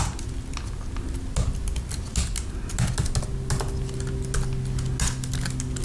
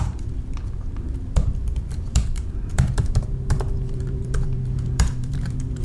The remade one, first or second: second